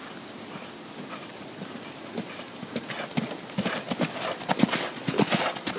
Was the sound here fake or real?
real